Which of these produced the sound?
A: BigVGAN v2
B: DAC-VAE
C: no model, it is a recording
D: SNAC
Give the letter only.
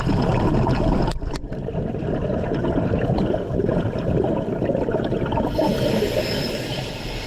C